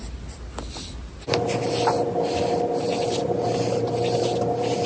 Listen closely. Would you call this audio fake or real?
real